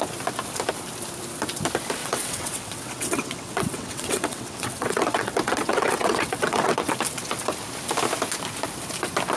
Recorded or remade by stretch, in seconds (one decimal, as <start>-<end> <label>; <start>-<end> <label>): 0.0-2.0 recorded; 2.0-6.9 remade; 6.9-9.4 recorded